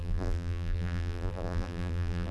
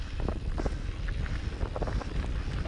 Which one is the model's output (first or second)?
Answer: first